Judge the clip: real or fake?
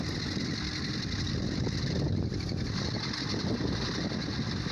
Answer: real